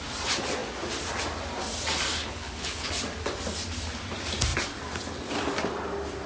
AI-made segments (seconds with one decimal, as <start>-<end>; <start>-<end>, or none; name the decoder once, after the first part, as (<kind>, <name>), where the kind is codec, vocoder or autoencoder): 2.2-2.9 (codec, HILCodec)